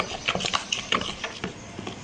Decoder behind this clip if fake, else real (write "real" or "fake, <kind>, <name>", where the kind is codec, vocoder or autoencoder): real